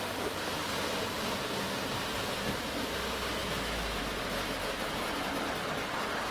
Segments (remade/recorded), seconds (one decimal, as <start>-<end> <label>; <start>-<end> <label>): 0.0-3.4 recorded; 3.4-4.0 remade; 4.0-6.3 recorded